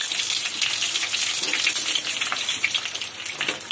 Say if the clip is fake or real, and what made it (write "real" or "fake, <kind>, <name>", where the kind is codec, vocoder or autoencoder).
real